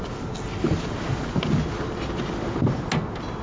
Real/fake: real